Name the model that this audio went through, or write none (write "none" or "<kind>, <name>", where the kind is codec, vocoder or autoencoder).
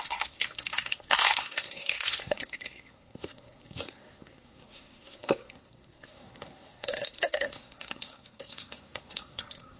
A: codec, SNAC